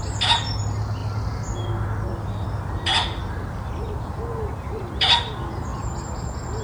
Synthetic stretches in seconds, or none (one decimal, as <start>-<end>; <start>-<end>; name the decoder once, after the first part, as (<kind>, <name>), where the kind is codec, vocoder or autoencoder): none